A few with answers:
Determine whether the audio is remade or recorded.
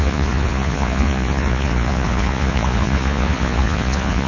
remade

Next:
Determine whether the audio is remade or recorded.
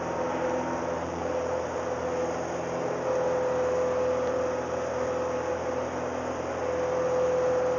recorded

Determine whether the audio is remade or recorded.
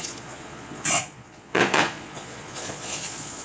remade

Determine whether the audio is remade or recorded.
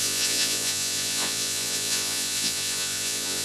remade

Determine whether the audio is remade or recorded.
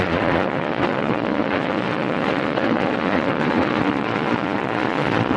remade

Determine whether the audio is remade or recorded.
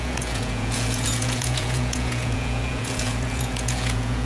remade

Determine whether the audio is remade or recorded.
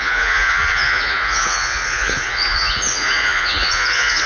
remade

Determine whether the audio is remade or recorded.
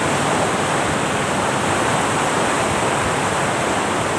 recorded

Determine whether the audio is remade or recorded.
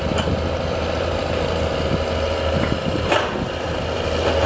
recorded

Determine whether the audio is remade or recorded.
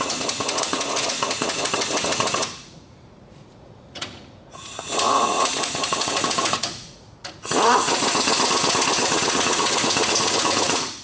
remade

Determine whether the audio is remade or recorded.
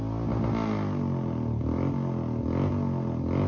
recorded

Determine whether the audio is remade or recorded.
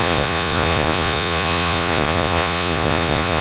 remade